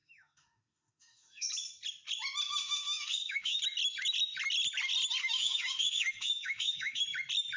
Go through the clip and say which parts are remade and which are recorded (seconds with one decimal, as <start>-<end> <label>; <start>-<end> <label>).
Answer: 0.0-1.5 remade; 1.5-2.6 recorded; 2.6-3.6 remade; 3.6-5.2 recorded; 5.2-7.0 remade; 7.0-7.6 recorded